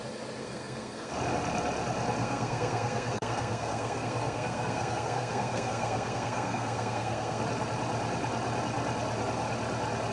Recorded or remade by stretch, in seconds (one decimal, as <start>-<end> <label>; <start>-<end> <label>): 0.0-0.4 recorded; 0.4-1.1 remade; 1.1-2.2 recorded; 2.2-7.4 remade; 7.4-10.1 recorded